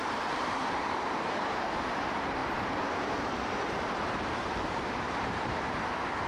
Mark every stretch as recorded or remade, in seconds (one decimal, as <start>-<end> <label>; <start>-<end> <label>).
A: 0.0-6.3 remade